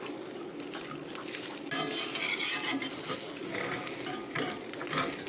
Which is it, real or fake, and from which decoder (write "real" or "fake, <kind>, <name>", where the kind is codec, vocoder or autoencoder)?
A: real